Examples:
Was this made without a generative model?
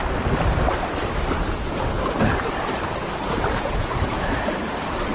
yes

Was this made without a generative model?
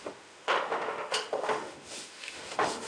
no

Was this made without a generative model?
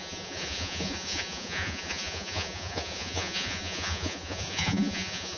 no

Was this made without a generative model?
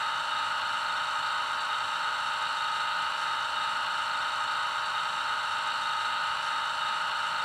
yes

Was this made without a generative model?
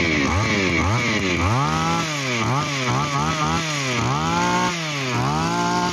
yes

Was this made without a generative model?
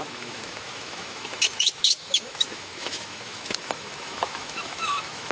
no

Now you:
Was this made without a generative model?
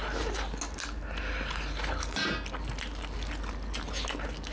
yes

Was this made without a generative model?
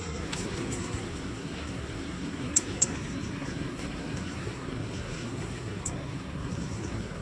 no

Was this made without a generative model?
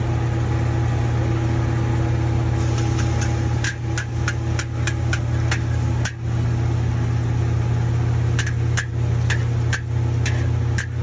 yes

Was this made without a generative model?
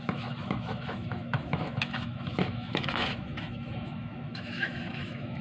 no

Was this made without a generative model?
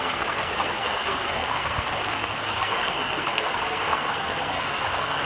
no